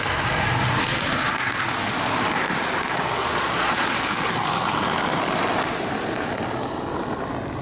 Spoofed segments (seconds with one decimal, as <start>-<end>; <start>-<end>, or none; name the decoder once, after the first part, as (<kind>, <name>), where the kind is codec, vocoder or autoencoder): 3.2-3.9 (vocoder, Vocos)